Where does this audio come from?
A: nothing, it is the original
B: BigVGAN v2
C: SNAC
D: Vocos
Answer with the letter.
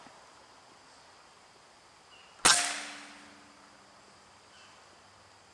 A